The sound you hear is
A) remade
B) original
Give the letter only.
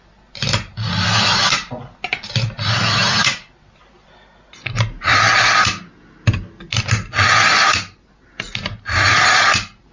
B